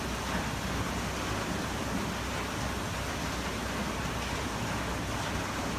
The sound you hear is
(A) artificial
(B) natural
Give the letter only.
B